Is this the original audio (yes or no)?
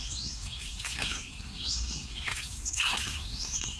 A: no